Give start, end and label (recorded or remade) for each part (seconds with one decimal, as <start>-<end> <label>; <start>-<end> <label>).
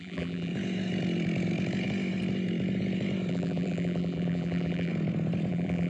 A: 0.0-0.5 remade; 0.5-3.3 recorded; 3.3-4.9 remade; 4.9-5.5 recorded; 5.5-5.9 remade